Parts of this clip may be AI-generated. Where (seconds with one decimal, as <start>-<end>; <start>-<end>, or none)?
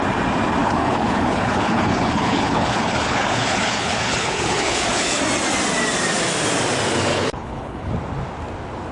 0.6-5.2; 7.1-7.9